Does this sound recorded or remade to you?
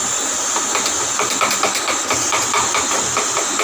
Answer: recorded